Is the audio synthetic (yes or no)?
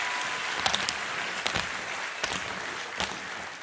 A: no